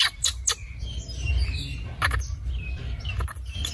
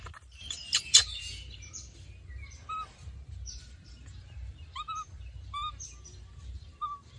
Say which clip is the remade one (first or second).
second